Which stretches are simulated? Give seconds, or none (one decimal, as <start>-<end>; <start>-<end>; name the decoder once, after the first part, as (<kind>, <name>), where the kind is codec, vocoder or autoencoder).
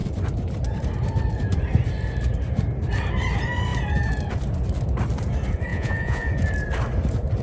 5.7-6.3 (vocoder, Vocos)